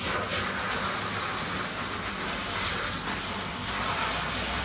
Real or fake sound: real